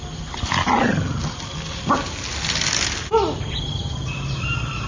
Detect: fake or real real